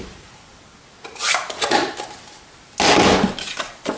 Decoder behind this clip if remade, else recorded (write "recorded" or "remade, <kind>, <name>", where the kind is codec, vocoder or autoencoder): recorded